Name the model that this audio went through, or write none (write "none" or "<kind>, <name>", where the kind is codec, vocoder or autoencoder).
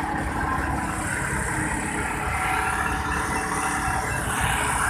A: none